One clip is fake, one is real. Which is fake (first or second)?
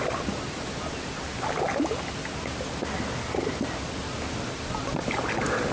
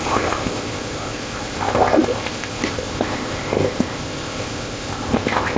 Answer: second